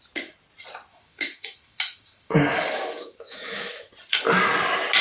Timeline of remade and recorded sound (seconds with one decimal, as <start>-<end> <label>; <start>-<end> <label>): 0.0-0.9 recorded; 0.9-3.9 remade; 3.9-5.0 recorded